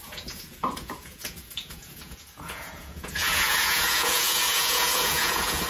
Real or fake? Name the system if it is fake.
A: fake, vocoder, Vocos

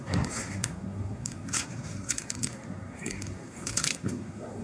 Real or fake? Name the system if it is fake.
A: fake, codec, SNAC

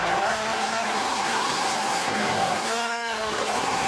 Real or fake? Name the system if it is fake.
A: fake, codec, SNAC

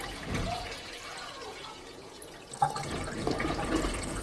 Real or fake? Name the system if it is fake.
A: fake, vocoder, Vocos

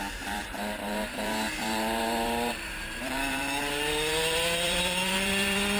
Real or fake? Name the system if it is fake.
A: fake, vocoder, BigVGAN v2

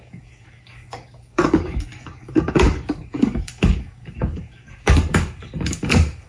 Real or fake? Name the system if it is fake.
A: fake, codec, DAC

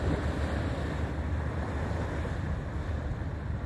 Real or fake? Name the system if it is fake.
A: real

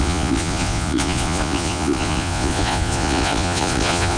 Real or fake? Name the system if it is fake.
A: fake, vocoder, Vocos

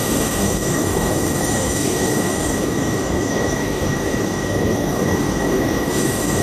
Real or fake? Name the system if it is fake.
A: fake, codec, DAC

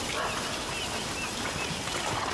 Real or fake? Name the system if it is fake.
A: real